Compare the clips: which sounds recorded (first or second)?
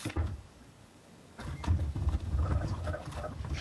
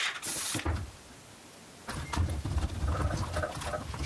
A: second